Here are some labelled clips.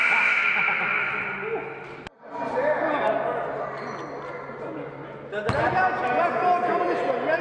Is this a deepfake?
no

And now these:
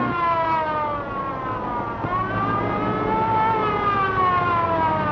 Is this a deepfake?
no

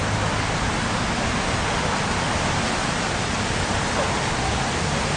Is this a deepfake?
no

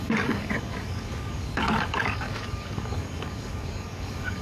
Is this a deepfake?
yes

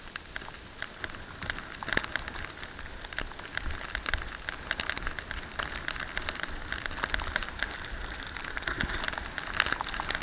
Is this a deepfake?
no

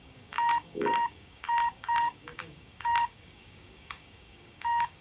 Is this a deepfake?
yes